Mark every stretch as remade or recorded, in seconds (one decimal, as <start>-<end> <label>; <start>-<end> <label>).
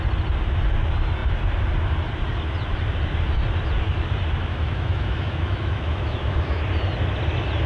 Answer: 0.0-4.5 recorded; 4.5-6.6 remade; 6.6-7.7 recorded